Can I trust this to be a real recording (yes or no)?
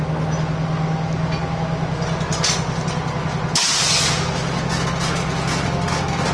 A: yes